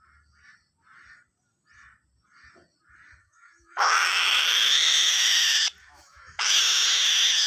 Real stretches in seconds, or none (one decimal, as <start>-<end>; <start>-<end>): 0.0-3.2; 5.1-5.8; 6.6-7.5